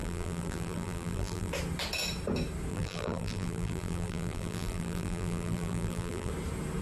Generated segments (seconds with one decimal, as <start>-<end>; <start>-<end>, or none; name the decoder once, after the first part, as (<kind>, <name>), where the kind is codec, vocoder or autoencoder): 0.0-1.5 (vocoder, BigVGAN v2); 2.7-6.3